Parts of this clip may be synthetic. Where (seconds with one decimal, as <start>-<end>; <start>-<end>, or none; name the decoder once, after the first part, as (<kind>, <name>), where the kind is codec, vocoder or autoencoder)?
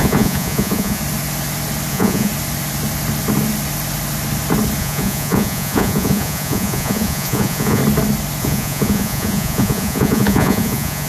0.0-1.0 (vocoder, Vocos); 1.9-2.3; 4.8-7.8; 8.4-11.1